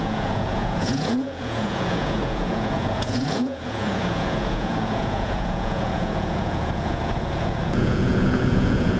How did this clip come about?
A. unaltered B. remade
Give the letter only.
B